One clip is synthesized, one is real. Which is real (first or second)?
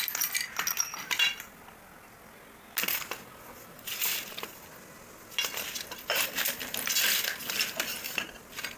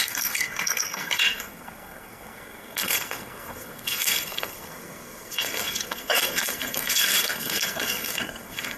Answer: first